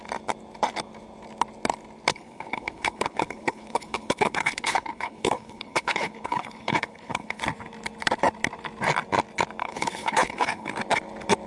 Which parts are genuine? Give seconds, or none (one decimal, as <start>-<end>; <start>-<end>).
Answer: 0.0-2.1; 7.4-9.6; 10.7-11.5